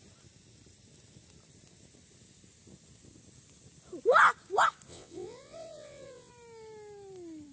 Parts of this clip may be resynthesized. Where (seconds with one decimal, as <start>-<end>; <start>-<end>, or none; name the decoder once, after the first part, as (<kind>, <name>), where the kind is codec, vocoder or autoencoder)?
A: 4.9-6.3 (vocoder, WaveNeXt)